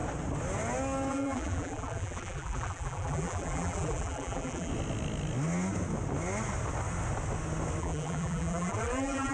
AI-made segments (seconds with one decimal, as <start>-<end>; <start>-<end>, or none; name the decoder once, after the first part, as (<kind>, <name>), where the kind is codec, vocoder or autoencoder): 1.1-4.7 (vocoder, BigVGAN v2); 7.8-9.3